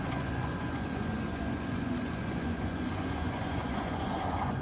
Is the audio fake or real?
fake